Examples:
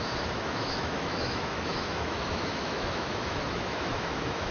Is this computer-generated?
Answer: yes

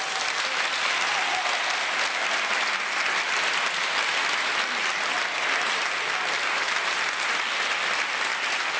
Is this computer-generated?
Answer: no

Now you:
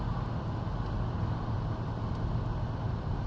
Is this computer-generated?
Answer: no